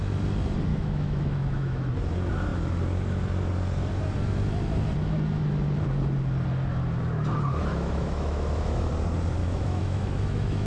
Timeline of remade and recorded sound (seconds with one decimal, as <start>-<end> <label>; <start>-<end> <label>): 0.0-0.7 recorded; 0.7-1.9 remade; 1.9-7.7 recorded; 7.7-8.9 remade; 8.9-9.4 recorded; 9.4-10.7 remade